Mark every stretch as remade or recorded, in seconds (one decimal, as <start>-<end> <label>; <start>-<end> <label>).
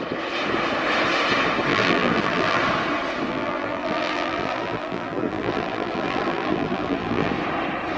0.0-1.7 recorded; 1.7-2.6 remade; 2.6-3.3 recorded; 3.3-7.3 remade; 7.3-8.0 recorded